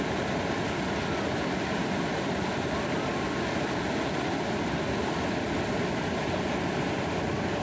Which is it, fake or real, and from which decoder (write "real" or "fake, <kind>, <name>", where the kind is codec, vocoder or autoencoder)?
real